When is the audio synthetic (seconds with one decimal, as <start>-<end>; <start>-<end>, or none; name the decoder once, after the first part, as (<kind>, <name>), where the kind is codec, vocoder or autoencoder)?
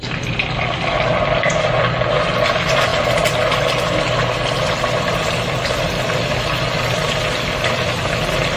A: none